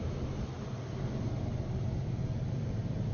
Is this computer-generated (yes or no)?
no